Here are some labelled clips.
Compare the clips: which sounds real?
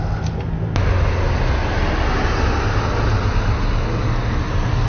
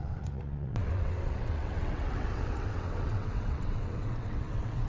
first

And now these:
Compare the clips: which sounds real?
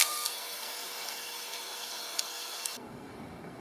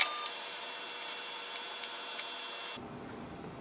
second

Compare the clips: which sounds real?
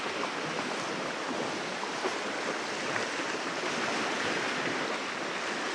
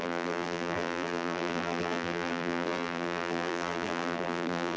first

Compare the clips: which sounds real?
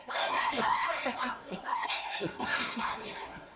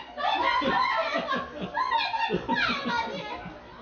second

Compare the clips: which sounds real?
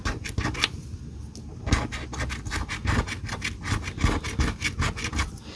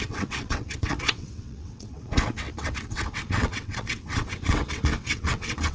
first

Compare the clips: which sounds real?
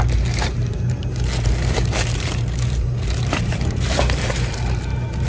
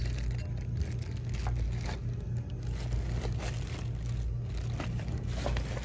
second